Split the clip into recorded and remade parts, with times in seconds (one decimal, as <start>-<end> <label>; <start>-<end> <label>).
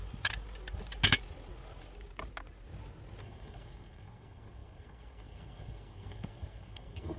0.0-3.2 recorded; 3.2-7.2 remade